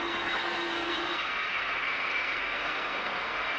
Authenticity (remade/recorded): remade